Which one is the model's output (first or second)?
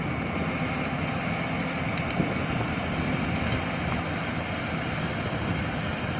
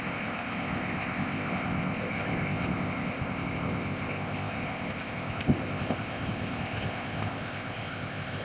second